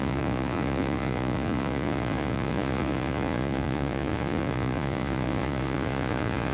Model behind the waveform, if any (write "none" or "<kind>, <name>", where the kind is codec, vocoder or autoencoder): vocoder, Vocos